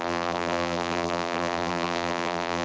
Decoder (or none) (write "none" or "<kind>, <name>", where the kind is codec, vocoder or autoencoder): vocoder, BigVGAN v2